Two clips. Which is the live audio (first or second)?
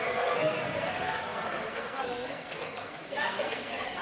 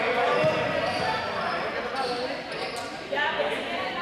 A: second